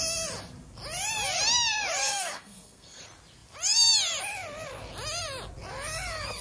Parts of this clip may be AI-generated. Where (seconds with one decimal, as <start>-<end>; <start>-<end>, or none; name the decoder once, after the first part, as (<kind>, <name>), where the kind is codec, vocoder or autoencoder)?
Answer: 2.0-3.0 (codec, SNAC)